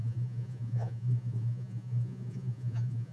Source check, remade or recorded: remade